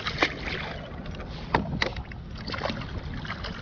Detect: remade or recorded recorded